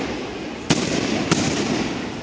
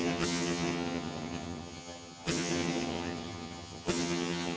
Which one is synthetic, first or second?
second